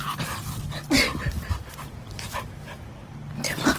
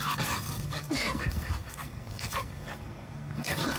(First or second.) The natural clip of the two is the first